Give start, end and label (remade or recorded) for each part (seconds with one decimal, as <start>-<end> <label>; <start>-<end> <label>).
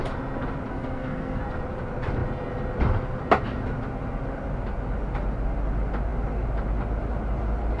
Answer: 0.0-0.7 recorded; 0.7-1.4 remade; 1.4-7.8 recorded